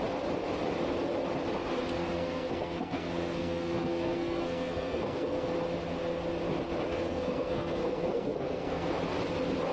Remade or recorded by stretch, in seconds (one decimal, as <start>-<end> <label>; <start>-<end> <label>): 0.0-2.0 recorded; 2.0-5.5 remade; 5.5-6.9 recorded; 6.9-8.9 remade; 8.9-9.7 recorded

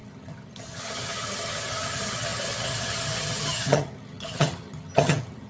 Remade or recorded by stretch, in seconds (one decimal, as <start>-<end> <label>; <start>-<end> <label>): 0.0-5.5 remade

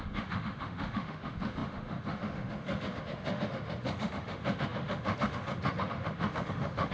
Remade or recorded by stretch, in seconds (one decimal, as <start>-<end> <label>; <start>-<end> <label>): 0.0-6.9 remade

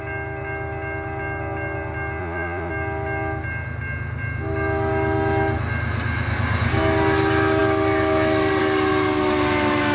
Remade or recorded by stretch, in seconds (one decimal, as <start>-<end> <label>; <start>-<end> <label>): 0.0-2.2 recorded; 2.2-2.7 remade; 2.7-9.9 recorded

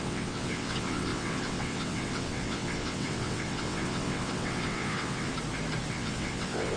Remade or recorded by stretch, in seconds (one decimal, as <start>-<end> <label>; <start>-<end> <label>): 0.0-5.3 remade; 5.3-5.9 recorded; 5.9-6.8 remade

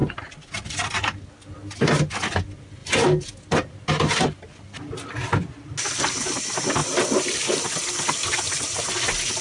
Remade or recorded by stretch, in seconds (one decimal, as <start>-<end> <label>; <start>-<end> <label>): 0.0-9.4 recorded